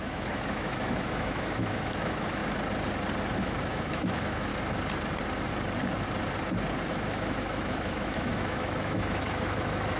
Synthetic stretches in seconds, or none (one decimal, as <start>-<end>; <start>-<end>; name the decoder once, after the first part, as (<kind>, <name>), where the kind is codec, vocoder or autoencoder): 0.0-2.4 (autoencoder, DAC-VAE); 3.4-4.5; 6.9-10.0